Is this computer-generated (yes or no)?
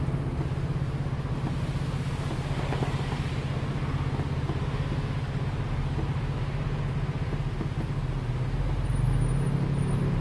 no